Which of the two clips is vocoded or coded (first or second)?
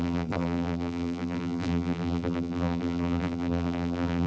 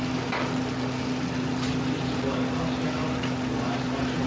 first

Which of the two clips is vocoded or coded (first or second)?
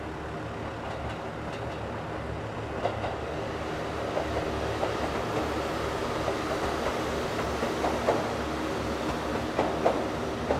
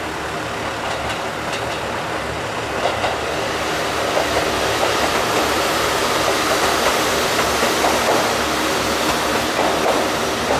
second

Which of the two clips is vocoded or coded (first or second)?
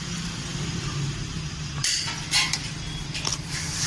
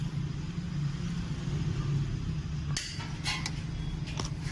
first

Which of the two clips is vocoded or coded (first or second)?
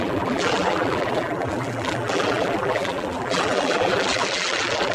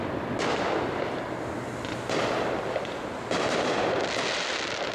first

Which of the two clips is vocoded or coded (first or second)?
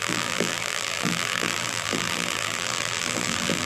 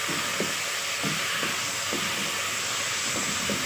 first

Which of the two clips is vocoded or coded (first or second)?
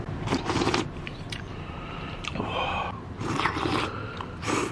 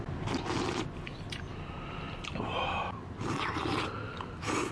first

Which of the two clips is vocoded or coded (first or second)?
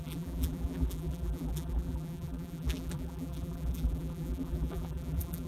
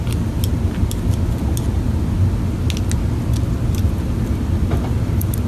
first